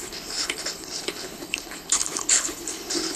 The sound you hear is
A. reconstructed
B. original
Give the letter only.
A